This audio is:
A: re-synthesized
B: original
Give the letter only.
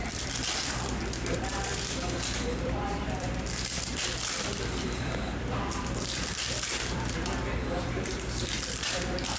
A